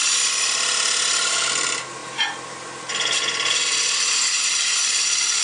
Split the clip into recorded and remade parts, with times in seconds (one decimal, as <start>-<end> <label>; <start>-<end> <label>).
0.0-5.4 recorded